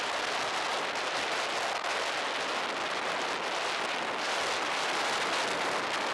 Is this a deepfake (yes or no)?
no